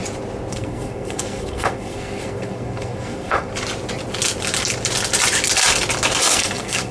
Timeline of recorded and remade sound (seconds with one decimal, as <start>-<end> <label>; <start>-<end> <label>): 0.0-0.5 recorded; 0.5-3.5 remade; 3.5-6.2 recorded; 6.2-6.9 remade